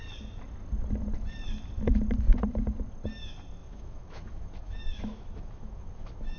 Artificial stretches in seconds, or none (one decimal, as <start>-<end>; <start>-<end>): 3.6-6.4

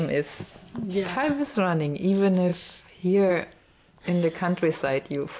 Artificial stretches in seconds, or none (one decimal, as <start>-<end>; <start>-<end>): 2.5-3.3

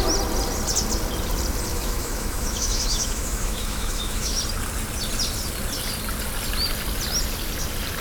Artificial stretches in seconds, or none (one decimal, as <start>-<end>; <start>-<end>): 1.7-4.4

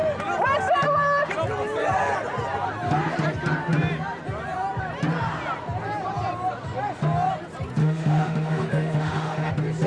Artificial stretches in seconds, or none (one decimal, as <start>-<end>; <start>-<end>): 7.8-9.5

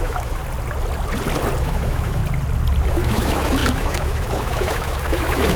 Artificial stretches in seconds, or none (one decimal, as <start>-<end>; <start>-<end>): 0.0-0.4; 1.6-2.2; 2.9-5.6